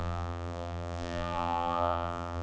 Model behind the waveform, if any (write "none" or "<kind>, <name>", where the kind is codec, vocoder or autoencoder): vocoder, BigVGAN v2